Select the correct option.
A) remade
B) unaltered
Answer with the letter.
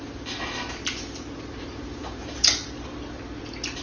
B